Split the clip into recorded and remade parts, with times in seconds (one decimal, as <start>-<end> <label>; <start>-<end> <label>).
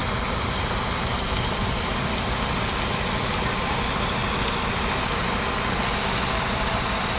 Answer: 0.0-3.6 remade; 3.6-4.2 recorded; 4.2-4.7 remade; 4.7-7.2 recorded